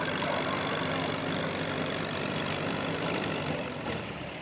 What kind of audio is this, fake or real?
fake